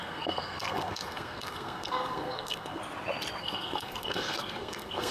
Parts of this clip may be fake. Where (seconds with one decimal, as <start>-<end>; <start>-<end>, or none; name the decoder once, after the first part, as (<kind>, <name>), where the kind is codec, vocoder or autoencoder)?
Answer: 0.0-2.8 (codec, SNAC); 3.4-5.1